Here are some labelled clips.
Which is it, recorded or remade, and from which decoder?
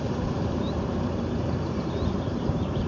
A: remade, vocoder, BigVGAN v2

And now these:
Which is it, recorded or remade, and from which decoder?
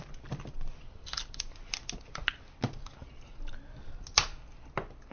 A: recorded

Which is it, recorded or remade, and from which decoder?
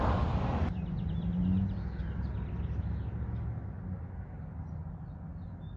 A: recorded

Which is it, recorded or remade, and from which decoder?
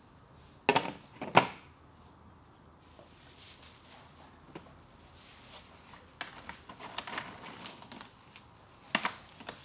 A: recorded